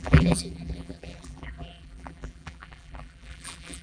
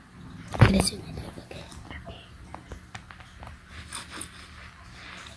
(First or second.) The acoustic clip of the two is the second